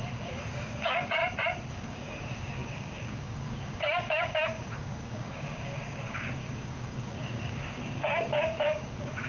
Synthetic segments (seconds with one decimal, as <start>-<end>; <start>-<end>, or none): 0.0-1.2; 1.7-9.3